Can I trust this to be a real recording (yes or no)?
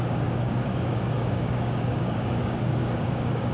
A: no